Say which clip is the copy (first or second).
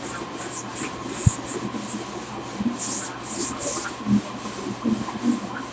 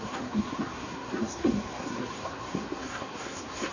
second